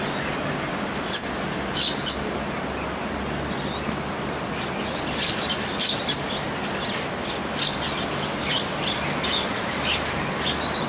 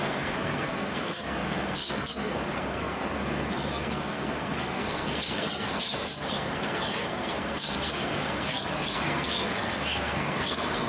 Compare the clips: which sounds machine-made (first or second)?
second